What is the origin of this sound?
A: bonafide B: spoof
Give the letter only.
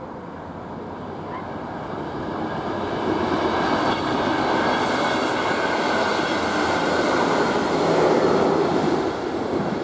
A